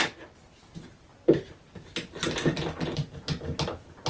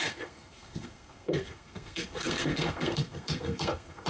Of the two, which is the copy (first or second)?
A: second